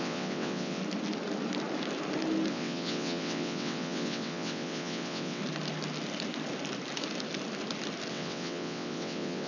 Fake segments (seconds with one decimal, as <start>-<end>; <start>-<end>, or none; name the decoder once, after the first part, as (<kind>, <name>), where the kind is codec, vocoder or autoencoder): 0.0-0.8 (vocoder, WaveNeXt); 2.5-5.4; 8.1-9.5